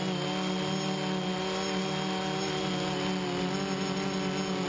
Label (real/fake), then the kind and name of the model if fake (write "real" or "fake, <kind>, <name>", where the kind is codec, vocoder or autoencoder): real